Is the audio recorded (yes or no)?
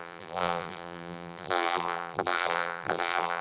no